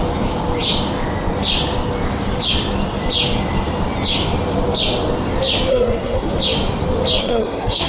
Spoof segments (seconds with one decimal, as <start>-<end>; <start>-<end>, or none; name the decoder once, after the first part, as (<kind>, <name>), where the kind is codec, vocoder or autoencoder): 5.7-6.3 (codec, SNAC); 7.2-7.9